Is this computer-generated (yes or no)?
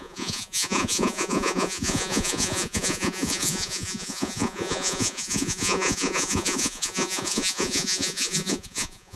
yes